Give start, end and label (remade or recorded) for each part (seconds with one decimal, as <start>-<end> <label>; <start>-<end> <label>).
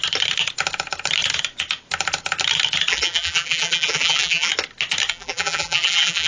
0.0-2.9 recorded; 2.9-4.5 remade; 4.5-5.1 recorded; 5.1-6.3 remade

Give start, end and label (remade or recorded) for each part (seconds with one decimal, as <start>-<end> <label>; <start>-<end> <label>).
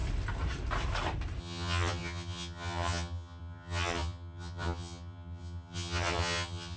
0.0-1.4 recorded; 1.4-6.8 remade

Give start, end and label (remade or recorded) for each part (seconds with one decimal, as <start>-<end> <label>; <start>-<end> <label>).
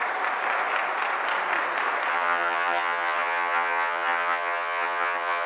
0.0-2.1 recorded; 2.1-5.5 remade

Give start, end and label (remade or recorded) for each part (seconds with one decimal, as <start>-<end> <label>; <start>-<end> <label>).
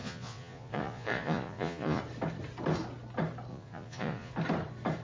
0.0-2.0 remade; 2.0-3.5 recorded; 3.5-4.3 remade; 4.3-5.0 recorded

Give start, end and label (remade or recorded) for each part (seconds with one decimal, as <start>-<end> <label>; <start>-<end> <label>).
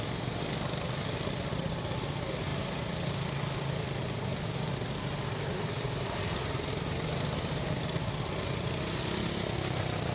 0.0-10.1 recorded